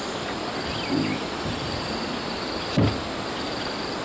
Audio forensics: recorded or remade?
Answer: recorded